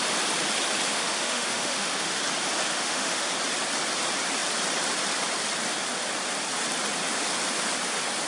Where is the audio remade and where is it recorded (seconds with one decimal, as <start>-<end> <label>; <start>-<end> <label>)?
0.0-0.9 recorded; 0.9-2.2 remade; 2.2-2.7 recorded; 2.7-3.3 remade; 3.3-8.3 recorded